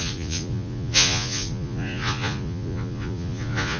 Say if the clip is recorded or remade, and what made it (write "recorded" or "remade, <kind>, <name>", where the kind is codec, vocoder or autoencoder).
remade, vocoder, Vocos